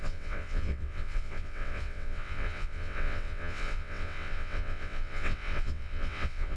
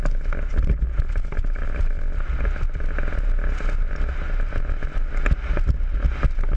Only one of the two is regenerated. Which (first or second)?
first